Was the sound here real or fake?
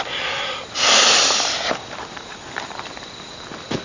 real